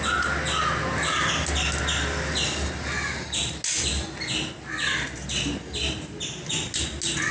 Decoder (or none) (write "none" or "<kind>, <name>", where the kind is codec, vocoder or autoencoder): none